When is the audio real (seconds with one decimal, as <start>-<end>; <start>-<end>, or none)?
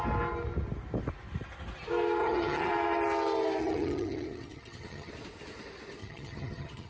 0.0-2.2; 2.7-3.6; 5.1-6.0